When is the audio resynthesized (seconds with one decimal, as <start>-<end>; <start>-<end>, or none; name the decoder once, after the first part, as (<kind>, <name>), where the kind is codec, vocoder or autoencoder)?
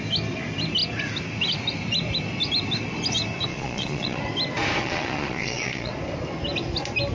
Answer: 3.5-4.2 (vocoder, Vocos); 4.8-5.9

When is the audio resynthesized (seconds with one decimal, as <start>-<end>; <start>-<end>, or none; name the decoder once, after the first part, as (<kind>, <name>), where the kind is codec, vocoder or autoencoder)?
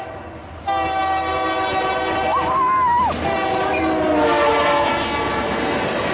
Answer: none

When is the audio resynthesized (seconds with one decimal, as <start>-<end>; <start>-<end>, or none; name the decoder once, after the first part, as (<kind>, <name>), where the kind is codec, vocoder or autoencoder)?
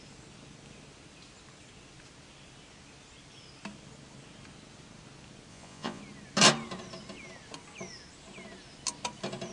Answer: 5.5-6.0 (vocoder, Vocos)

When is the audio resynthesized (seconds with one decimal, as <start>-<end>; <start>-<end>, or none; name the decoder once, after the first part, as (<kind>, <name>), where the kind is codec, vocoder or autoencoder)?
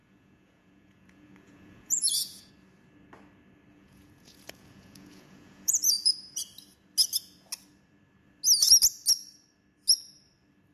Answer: 0.0-2.5 (vocoder, Vocos); 3.7-6.4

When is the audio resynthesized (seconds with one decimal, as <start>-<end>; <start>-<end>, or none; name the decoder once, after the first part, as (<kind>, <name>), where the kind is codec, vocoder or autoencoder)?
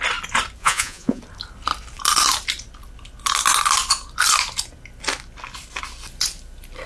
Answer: 0.6-1.2 (vocoder, Vocos)